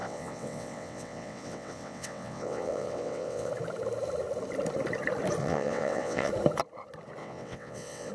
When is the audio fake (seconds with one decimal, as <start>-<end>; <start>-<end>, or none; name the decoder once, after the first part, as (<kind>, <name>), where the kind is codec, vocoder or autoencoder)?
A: 0.0-3.5 (vocoder, WaveNeXt); 5.4-6.3; 7.2-8.1